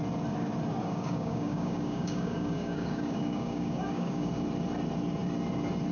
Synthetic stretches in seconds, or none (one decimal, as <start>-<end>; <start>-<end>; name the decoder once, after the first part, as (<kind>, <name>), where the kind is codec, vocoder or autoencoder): 0.8-4.3 (codec, DAC)